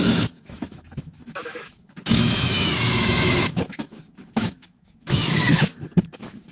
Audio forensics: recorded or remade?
remade